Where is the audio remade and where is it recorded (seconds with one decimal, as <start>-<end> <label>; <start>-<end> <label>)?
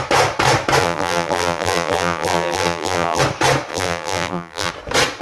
0.0-0.8 recorded; 0.8-3.2 remade; 3.2-3.7 recorded; 3.7-4.7 remade; 4.7-5.2 recorded